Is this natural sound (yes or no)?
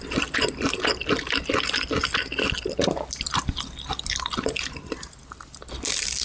yes